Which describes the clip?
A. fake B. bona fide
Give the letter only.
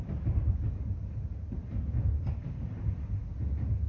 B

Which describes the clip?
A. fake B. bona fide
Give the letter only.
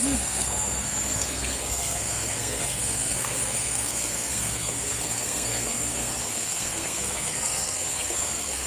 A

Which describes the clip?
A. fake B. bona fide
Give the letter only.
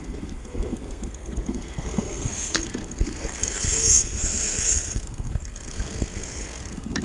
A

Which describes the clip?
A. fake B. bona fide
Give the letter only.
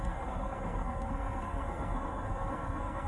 A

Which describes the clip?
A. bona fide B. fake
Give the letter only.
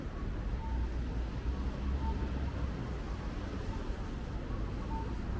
A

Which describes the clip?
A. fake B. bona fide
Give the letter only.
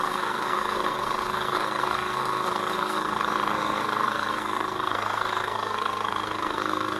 A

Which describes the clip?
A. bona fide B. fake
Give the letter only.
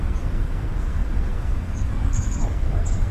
B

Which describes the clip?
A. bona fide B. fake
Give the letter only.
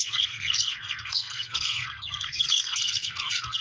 B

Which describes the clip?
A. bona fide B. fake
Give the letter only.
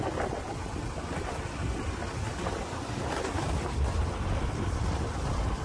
A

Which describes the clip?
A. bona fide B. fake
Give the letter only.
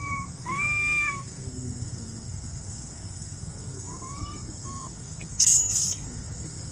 B